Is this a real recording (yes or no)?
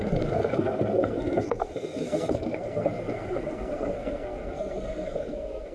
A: no